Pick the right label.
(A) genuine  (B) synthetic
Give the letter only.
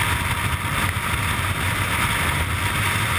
A